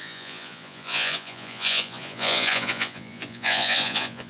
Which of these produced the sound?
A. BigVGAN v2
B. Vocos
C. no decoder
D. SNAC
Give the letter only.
B